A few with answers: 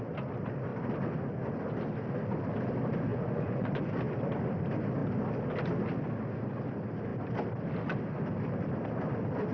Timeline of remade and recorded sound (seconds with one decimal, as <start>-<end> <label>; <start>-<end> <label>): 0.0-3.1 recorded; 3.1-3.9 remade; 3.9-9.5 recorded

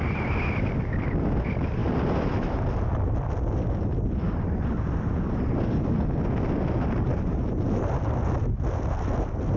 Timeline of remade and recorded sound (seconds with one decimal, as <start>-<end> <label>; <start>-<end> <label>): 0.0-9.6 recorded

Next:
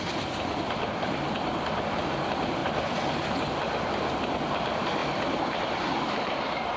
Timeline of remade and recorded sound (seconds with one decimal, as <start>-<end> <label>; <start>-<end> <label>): 0.0-6.8 recorded

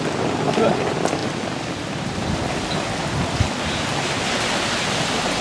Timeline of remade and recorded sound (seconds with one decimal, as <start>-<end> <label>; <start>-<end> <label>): 0.0-5.4 recorded

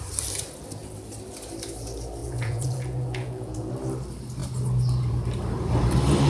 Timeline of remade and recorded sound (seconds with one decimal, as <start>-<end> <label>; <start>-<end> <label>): 0.0-2.2 recorded; 2.2-3.7 remade; 3.7-6.3 recorded

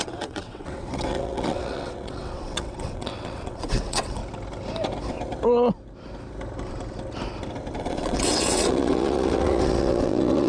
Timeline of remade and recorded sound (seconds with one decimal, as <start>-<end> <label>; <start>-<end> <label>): 0.0-4.2 remade; 4.2-7.8 recorded; 7.8-10.5 remade

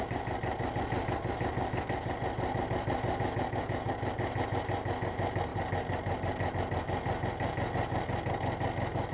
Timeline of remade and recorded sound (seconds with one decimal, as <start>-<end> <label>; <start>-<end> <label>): 0.0-9.1 recorded

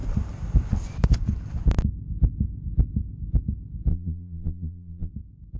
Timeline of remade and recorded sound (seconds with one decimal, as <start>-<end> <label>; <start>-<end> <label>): 0.0-3.9 recorded; 3.9-5.1 remade; 5.1-5.6 recorded